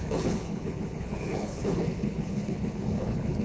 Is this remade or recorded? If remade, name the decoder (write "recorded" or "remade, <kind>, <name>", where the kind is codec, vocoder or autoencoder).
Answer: remade, codec, HILCodec